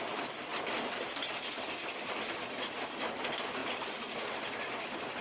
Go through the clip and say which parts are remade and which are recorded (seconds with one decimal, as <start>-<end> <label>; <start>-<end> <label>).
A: 0.0-5.2 recorded